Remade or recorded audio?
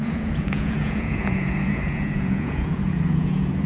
remade